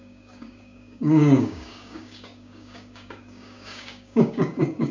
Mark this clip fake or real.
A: fake